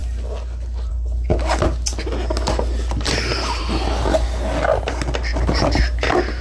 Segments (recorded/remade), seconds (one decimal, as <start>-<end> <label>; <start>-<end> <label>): 0.0-6.4 recorded